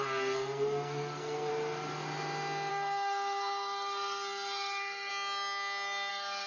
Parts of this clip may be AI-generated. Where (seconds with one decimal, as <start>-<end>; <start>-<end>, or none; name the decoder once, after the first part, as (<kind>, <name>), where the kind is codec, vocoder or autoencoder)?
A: 0.0-1.5 (codec, SNAC); 2.7-5.1; 6.1-6.5